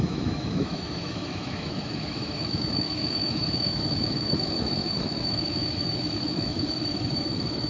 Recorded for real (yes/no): no